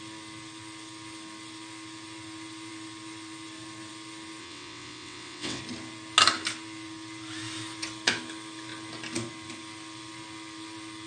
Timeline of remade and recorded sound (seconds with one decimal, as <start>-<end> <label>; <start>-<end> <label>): 0.0-4.4 recorded; 4.4-5.6 remade; 5.6-11.1 recorded